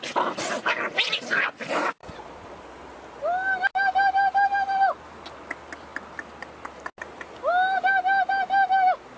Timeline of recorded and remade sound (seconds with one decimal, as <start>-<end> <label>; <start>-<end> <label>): 0.0-9.2 recorded